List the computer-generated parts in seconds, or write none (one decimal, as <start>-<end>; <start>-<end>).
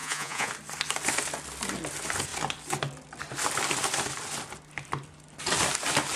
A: 0.0-0.5